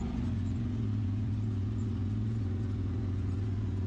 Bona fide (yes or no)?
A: no